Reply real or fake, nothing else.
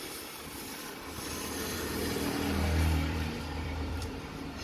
fake